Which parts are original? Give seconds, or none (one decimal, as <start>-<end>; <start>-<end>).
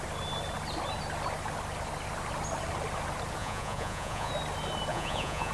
0.0-3.4; 4.3-4.9